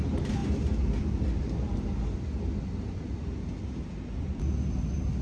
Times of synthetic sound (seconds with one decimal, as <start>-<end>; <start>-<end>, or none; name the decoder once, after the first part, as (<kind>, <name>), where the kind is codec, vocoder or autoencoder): none